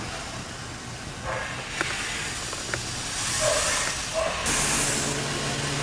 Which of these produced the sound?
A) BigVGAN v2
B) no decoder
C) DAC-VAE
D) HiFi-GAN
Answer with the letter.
B